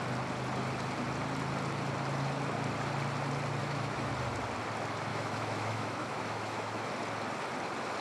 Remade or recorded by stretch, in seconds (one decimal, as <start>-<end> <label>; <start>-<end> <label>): 0.0-3.6 recorded; 3.6-4.1 remade; 4.1-5.1 recorded; 5.1-6.9 remade; 6.9-8.0 recorded